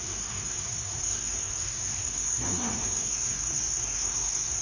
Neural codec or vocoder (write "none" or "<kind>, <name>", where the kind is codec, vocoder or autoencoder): codec, SNAC